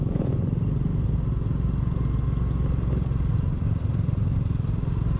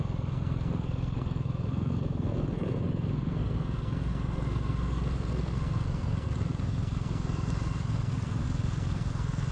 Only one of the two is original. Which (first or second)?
first